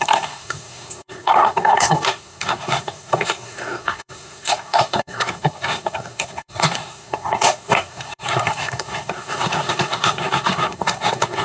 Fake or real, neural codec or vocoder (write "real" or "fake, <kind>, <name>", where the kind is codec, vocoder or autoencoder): fake, codec, SNAC